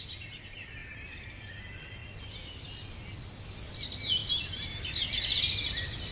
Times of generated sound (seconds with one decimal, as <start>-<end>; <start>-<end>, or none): none